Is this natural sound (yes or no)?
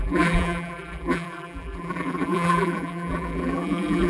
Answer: no